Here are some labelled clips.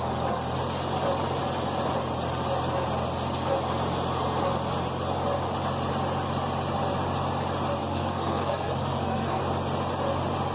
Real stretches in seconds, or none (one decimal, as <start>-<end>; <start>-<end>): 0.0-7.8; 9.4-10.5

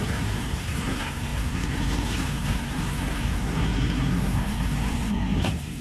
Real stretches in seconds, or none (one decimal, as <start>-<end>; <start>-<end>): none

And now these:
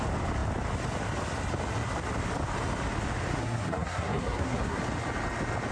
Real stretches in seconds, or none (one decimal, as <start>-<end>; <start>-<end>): 0.0-3.3; 4.8-5.7

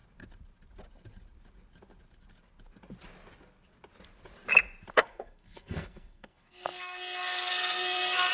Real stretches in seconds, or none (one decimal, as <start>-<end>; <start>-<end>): 0.0-4.9

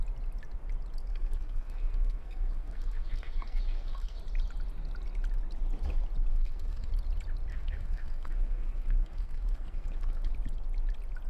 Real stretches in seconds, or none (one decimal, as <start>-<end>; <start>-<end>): 0.0-1.1; 4.2-6.3; 6.9-7.5; 10.3-11.3

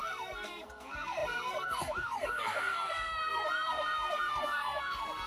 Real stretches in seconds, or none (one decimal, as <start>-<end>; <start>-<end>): none

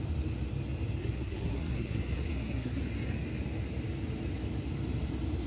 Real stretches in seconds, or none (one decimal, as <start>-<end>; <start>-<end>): 0.0-1.0; 2.8-5.5